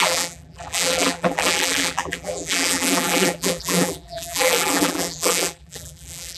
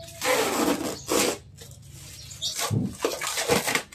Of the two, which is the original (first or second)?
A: second